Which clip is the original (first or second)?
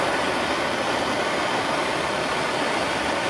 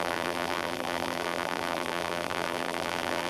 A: first